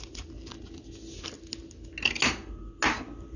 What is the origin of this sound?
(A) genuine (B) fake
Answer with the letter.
A